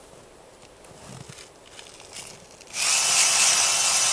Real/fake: real